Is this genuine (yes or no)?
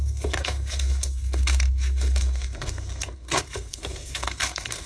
no